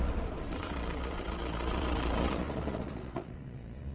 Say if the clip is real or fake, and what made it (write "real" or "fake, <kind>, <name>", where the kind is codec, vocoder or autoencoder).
fake, vocoder, Vocos